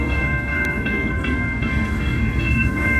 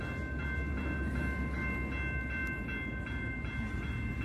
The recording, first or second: second